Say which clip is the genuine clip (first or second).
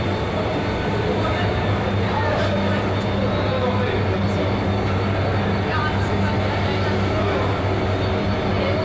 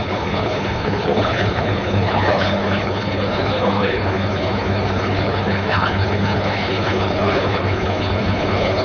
first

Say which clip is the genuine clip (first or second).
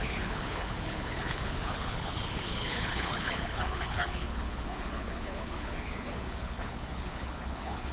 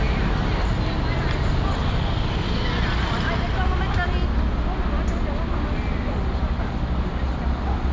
second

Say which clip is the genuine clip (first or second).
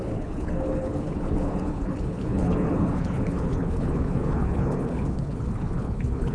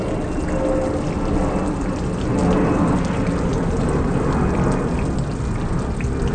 second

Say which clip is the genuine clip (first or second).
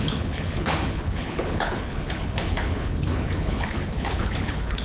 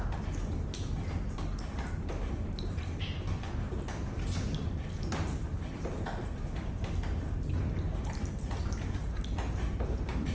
second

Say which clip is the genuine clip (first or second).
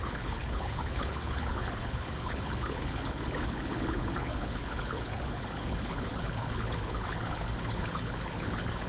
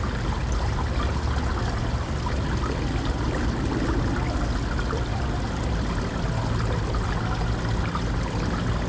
second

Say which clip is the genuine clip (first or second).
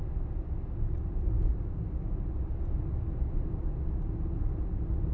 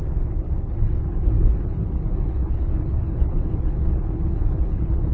first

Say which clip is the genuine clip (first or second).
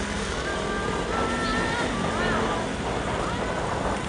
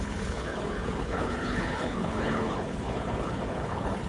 first